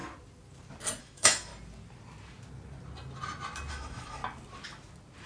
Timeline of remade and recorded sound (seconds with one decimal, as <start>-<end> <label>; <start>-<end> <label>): 0.0-1.0 recorded; 1.0-1.5 remade; 1.5-3.7 recorded; 3.7-4.2 remade; 4.2-5.3 recorded